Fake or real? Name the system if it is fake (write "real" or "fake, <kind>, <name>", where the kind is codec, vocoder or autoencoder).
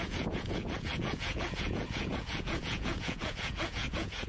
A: fake, vocoder, Vocos